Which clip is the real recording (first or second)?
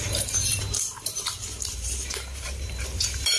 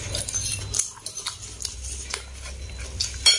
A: second